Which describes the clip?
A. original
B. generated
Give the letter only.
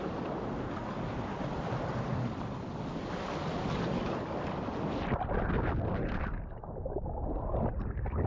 A